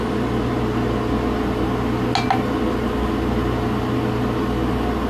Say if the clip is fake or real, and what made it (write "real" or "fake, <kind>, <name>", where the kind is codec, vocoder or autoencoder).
real